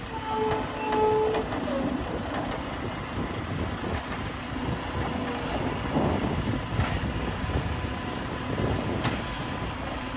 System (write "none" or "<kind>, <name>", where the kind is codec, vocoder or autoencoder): none